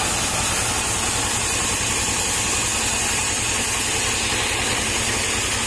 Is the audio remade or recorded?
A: recorded